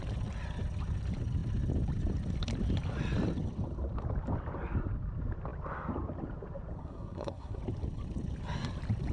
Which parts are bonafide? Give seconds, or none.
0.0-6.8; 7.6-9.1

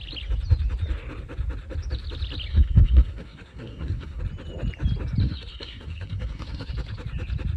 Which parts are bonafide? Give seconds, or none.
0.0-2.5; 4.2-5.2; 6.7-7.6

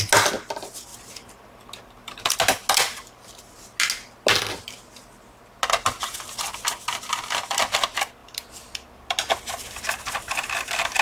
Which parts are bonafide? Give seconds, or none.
0.0-11.0